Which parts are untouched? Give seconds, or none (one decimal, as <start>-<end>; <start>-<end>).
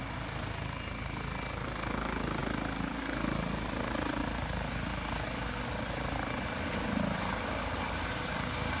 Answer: 0.0-8.8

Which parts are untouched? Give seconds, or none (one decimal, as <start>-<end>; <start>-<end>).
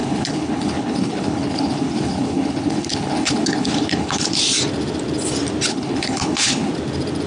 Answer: 4.4-5.7; 6.7-7.3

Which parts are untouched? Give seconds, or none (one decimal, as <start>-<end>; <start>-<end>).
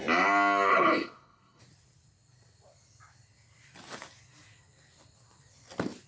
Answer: 0.0-0.7; 1.6-6.1